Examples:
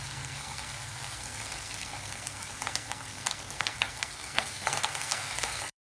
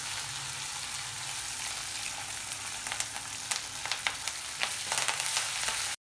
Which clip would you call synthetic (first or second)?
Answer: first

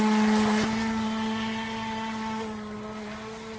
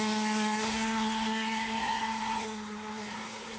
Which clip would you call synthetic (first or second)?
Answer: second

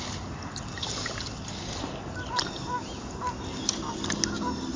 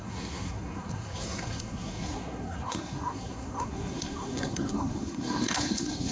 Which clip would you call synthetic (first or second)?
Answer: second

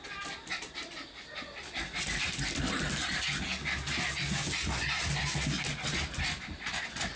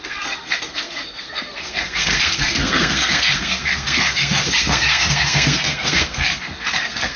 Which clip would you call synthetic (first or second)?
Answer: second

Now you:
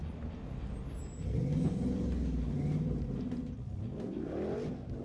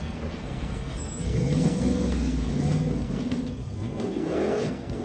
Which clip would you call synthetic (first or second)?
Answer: second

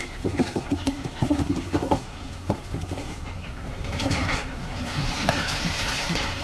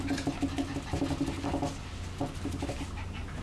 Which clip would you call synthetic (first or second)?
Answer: first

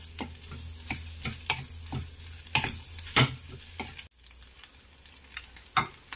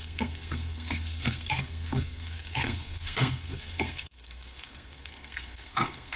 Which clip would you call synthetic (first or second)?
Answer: second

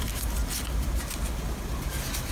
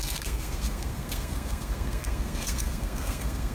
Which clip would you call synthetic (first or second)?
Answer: second